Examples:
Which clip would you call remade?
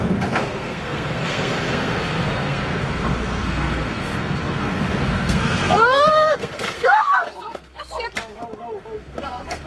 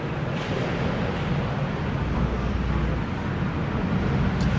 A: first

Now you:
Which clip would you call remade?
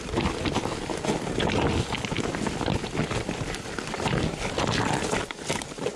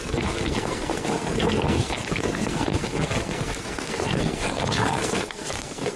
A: second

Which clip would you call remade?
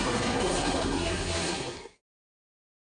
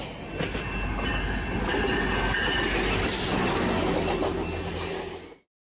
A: first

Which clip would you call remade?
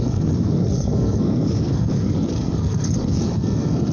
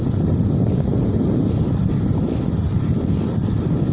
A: first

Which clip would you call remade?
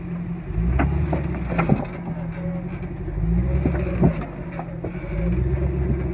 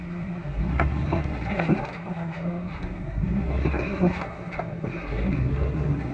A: second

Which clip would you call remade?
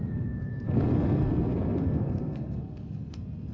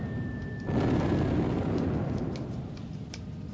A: first